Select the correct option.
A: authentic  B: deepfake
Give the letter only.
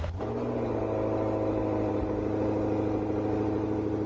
A